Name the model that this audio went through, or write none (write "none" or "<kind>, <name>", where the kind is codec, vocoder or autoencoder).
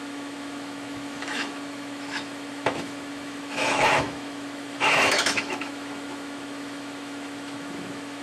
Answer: autoencoder, DAC-VAE